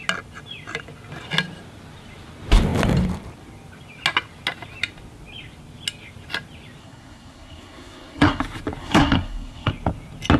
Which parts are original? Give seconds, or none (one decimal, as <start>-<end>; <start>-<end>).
0.0-6.8; 8.4-8.8; 9.7-10.4